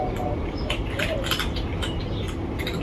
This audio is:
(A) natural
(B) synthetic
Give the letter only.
A